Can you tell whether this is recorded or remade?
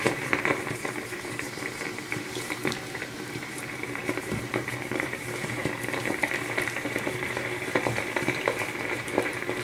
remade